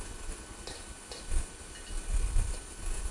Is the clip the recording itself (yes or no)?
yes